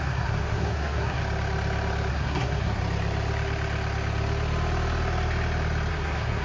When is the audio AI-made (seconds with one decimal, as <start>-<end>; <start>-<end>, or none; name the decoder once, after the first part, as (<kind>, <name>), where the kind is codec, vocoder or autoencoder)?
0.0-1.2 (codec, SNAC); 2.1-2.8; 5.9-6.4